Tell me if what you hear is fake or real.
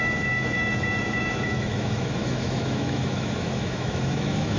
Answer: fake